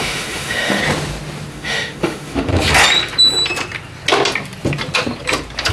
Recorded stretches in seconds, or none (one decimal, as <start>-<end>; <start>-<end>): 0.8-1.5; 2.5-5.7